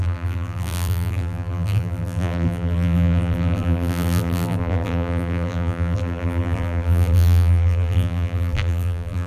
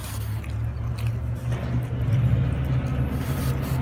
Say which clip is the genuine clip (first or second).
second